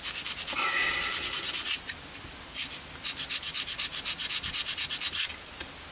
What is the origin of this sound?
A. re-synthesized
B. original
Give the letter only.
B